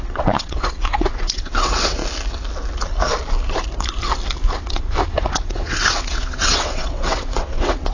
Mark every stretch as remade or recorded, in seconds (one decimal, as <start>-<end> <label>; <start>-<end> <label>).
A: 0.0-2.0 remade; 2.0-5.1 recorded; 5.1-7.9 remade